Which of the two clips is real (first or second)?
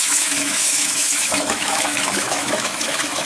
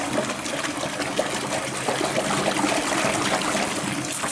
second